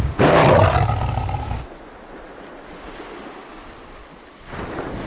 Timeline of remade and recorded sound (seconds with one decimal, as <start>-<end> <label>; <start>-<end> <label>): 0.0-0.4 remade; 0.4-3.5 recorded; 3.5-4.0 remade; 4.0-5.1 recorded